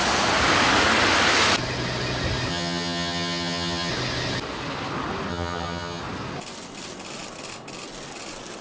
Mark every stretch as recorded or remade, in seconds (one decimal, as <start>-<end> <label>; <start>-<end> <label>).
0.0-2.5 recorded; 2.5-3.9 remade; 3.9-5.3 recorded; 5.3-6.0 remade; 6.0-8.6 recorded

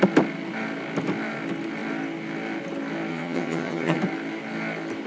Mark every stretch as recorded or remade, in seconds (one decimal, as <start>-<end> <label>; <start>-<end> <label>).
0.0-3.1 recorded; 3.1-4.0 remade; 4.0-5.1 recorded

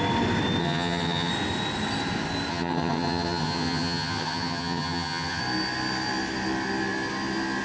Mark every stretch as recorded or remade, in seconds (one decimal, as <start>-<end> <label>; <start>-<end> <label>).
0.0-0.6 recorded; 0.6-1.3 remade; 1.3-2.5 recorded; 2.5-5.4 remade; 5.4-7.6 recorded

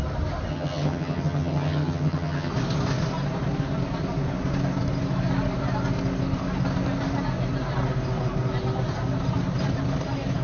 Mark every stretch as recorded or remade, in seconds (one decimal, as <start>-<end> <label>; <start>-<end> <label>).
0.0-0.5 recorded; 0.5-2.5 remade; 2.5-10.4 recorded

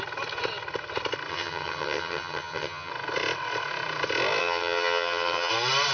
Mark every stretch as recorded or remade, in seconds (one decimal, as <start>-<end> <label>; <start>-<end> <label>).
0.0-1.3 recorded; 1.3-2.9 remade; 2.9-4.4 recorded; 4.4-5.5 remade; 5.5-5.9 recorded

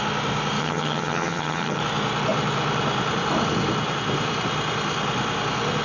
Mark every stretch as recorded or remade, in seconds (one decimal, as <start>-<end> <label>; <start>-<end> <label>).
0.0-0.6 recorded; 0.6-1.8 remade; 1.8-5.8 recorded

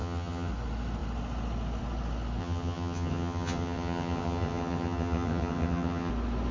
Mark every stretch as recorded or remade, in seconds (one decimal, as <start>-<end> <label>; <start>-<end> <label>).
0.0-0.5 remade; 0.5-2.4 recorded; 2.4-6.1 remade; 6.1-6.5 recorded

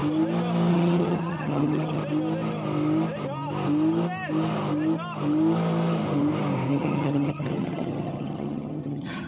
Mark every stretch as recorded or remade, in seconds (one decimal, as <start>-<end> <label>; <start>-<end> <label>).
0.0-0.7 recorded; 0.7-2.0 remade; 2.0-6.7 recorded; 6.7-9.3 remade